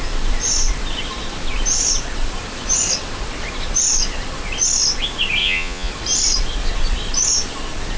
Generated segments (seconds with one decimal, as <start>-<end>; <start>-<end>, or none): 5.4-5.9